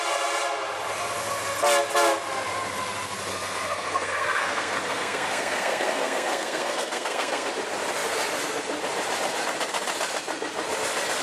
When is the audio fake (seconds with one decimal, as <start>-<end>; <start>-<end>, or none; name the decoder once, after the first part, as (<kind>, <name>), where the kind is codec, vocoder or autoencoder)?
3.3-7.5 (codec, SNAC)